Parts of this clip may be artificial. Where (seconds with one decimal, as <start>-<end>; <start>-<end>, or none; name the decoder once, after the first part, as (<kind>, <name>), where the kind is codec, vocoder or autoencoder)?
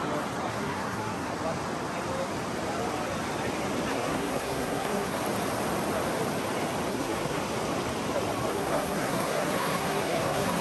0.5-1.3 (codec, SNAC); 3.9-5.2; 6.9-7.4; 8.5-10.6